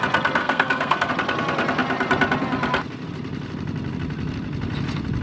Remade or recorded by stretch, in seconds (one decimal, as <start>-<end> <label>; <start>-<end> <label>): 0.0-0.4 recorded; 0.4-1.1 remade; 1.1-5.2 recorded